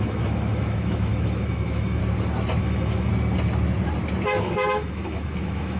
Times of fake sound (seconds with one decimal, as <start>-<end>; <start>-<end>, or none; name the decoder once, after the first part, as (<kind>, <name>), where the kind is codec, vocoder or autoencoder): 0.0-2.0 (autoencoder, DAC-VAE); 2.6-3.1; 4.4-5.8